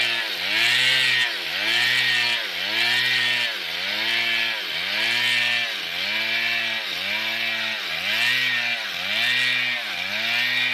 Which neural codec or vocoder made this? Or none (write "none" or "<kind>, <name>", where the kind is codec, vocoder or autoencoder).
none